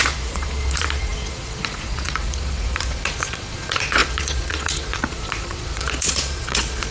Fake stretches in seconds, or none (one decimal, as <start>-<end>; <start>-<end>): 0.0-6.9